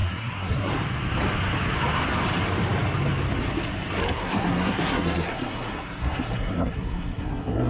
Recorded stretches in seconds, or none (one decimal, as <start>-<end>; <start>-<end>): 0.7-4.0